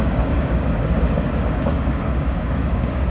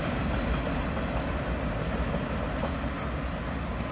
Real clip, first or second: second